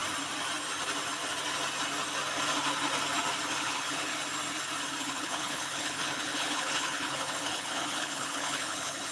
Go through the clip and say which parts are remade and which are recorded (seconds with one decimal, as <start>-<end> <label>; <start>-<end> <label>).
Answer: 0.0-3.6 recorded; 3.6-4.1 remade; 4.1-5.0 recorded; 5.0-9.1 remade